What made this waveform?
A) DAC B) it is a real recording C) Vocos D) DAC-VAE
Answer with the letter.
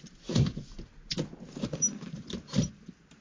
B